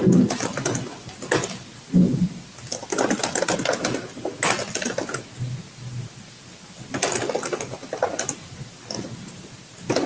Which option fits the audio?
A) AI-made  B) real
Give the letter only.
B